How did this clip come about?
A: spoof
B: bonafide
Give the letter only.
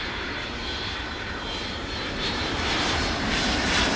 A